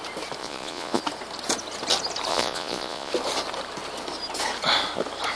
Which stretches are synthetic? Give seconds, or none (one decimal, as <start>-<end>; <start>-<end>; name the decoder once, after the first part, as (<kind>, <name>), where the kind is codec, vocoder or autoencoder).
0.4-1.0 (vocoder, Vocos); 2.3-3.1